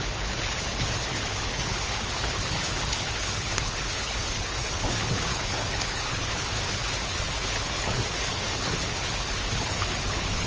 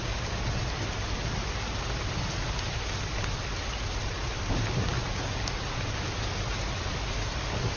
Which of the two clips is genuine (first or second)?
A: second